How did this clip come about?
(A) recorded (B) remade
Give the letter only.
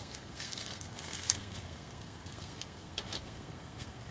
B